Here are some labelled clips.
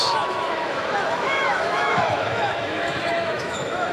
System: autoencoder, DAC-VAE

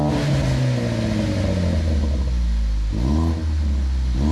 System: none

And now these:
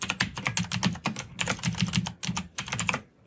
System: none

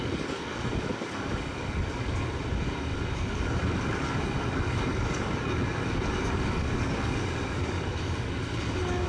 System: codec, DAC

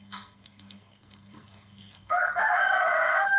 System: codec, SNAC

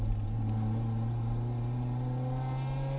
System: none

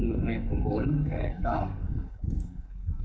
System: codec, SNAC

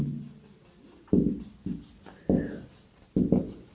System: none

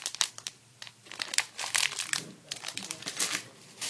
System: none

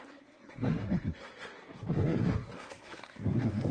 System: codec, SNAC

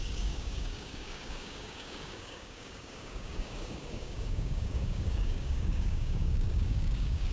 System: codec, DAC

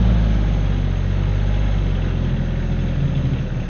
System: none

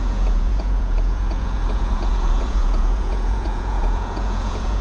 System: vocoder, Vocos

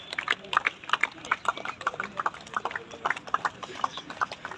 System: vocoder, BigVGAN v2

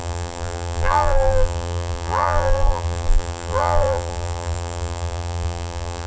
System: vocoder, BigVGAN v2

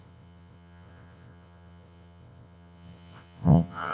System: vocoder, WaveNeXt